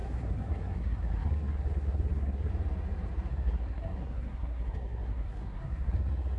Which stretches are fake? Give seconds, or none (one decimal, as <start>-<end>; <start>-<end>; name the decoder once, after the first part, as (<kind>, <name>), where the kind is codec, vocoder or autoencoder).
0.0-2.5 (codec, SNAC); 3.3-6.4